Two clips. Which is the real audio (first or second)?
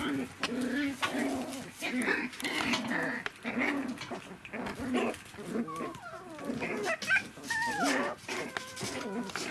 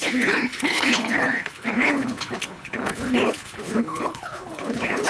first